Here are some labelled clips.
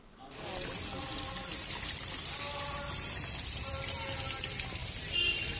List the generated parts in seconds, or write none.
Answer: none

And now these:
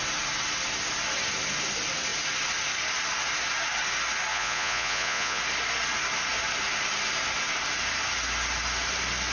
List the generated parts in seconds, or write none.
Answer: 4.3-5.4 (vocoder, Vocos)

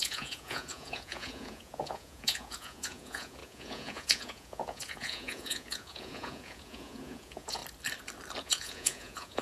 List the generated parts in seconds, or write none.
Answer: 0.0-7.6 (vocoder, Vocos); 8.4-9.4